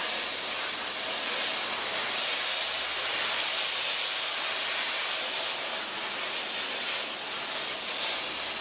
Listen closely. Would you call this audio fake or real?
real